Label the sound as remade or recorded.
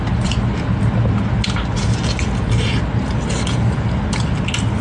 recorded